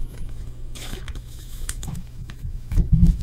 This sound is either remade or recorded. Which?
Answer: remade